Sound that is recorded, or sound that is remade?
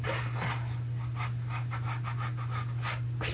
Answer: recorded